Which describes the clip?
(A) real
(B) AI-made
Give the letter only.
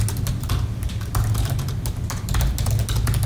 A